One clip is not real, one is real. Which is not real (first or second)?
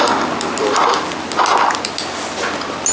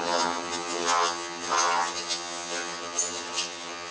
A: second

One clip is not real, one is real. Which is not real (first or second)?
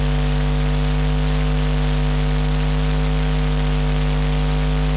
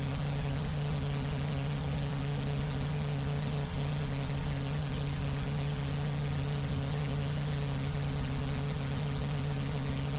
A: second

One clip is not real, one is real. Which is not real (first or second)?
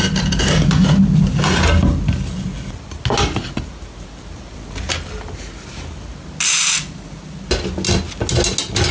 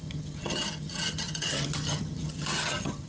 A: second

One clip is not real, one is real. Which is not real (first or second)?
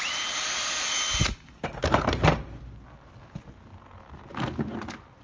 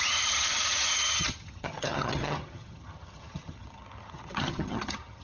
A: second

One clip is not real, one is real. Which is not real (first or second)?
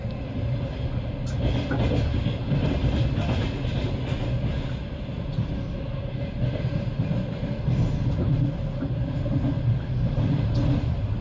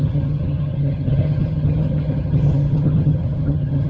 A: second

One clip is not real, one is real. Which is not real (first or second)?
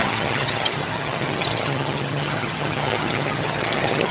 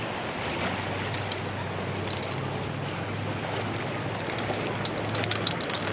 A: first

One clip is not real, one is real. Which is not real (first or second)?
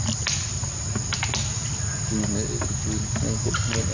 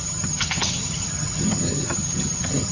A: second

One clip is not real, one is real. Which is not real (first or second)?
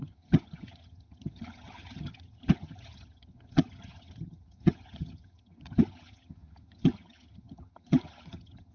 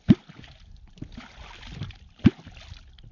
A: first